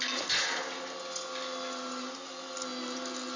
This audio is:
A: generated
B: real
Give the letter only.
B